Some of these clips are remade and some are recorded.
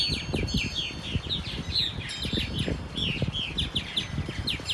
recorded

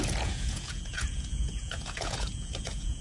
remade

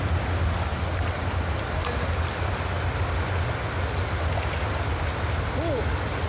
recorded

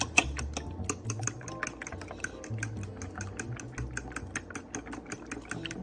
recorded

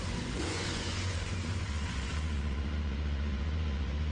remade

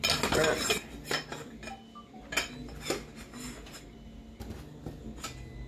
recorded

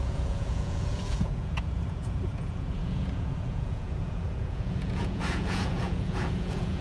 remade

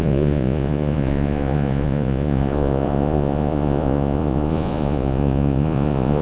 remade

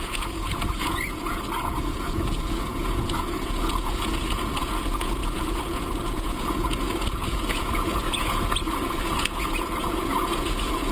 remade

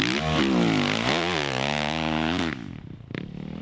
recorded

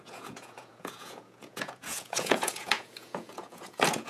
remade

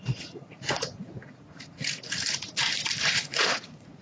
remade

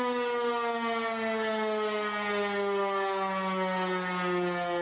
recorded